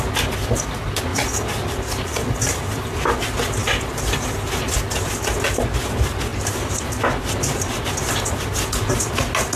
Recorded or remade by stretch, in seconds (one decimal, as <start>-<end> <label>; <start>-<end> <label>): 0.0-1.1 recorded; 1.1-3.2 remade; 3.2-6.3 recorded; 6.3-7.8 remade; 7.8-9.6 recorded